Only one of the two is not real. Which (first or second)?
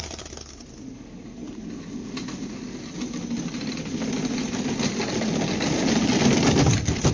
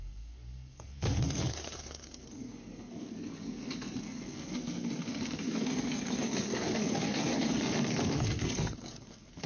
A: second